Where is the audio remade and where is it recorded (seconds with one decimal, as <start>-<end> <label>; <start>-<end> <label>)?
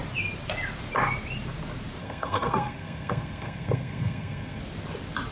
0.0-2.0 recorded; 2.0-4.6 remade; 4.6-5.3 recorded